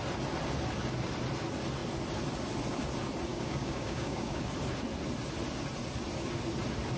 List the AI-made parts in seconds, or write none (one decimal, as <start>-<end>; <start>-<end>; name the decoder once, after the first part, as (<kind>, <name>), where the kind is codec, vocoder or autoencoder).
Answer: 3.3-4.4 (codec, DAC)